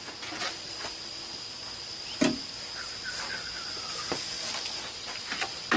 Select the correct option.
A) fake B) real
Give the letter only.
B